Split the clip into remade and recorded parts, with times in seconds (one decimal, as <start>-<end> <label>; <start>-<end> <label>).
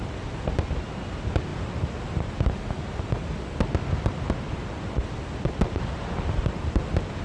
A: 0.0-7.2 recorded